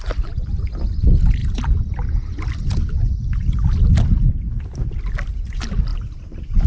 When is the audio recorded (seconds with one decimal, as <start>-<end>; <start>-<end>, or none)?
0.0-6.7